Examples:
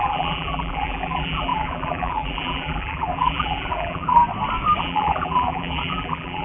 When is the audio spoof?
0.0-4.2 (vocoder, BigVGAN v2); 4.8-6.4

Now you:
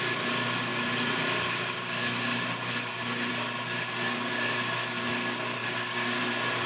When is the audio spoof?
5.6-6.2 (codec, DAC)

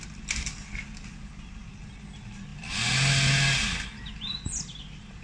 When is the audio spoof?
none

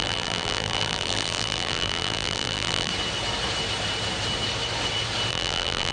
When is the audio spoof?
0.0-2.9 (vocoder, BigVGAN v2); 5.3-5.9

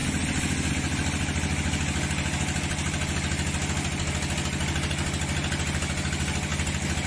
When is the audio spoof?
none

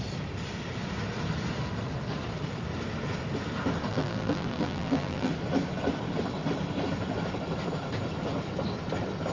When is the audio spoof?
3.9-5.3 (vocoder, BigVGAN v2)